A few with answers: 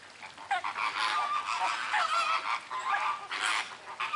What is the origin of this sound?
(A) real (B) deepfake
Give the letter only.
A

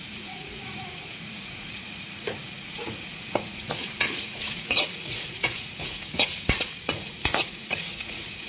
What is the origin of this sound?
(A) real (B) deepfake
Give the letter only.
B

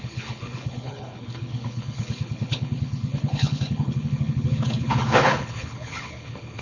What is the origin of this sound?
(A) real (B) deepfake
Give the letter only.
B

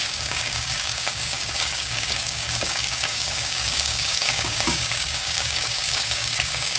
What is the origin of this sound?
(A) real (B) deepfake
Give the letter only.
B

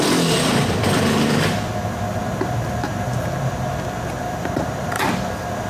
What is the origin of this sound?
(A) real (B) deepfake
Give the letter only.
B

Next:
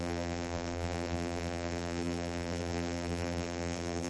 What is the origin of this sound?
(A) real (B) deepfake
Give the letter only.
B